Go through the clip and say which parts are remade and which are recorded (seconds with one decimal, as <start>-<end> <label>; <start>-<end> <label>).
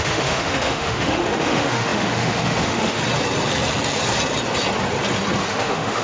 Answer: 0.0-3.0 remade; 3.0-5.5 recorded; 5.5-6.0 remade